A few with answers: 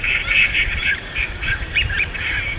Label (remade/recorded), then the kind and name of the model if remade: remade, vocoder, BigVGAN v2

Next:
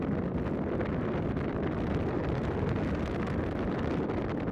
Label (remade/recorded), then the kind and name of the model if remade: recorded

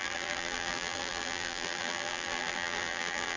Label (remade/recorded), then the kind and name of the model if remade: remade, vocoder, BigVGAN v2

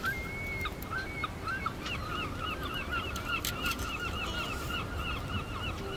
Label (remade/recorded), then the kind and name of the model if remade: recorded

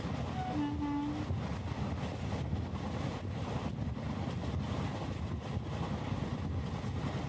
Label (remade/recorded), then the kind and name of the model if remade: recorded